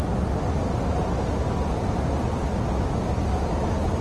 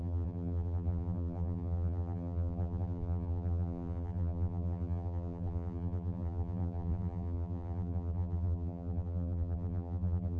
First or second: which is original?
first